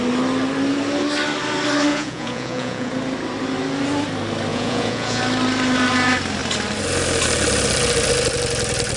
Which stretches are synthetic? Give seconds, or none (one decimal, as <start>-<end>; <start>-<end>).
1.9-2.9; 4.5-5.2